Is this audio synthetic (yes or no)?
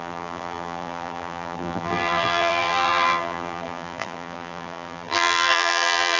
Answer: yes